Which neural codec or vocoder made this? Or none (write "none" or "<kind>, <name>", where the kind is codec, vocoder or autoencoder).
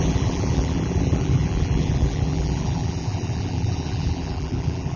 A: vocoder, BigVGAN v2